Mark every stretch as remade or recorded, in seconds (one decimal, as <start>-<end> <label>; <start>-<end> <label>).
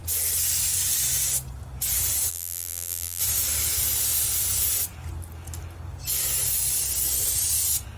0.0-2.3 recorded; 2.3-3.2 remade; 3.2-8.0 recorded